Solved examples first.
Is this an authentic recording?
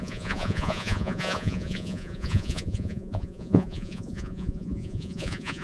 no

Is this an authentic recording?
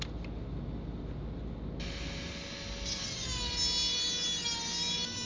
yes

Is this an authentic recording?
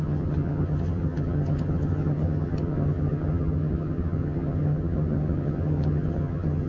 no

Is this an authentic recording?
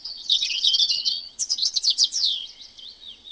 no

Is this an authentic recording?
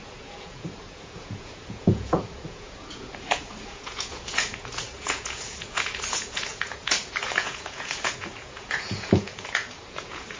no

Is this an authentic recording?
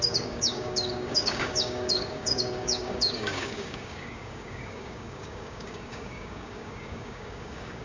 no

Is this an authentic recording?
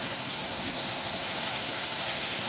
no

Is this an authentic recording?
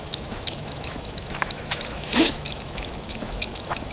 no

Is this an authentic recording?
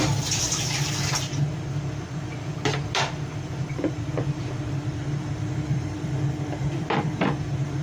no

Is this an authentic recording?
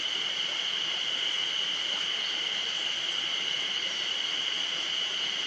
yes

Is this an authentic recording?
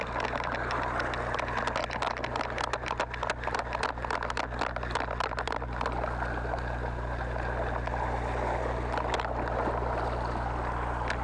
yes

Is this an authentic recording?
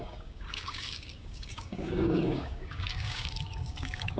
no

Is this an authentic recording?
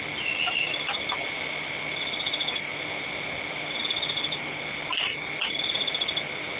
yes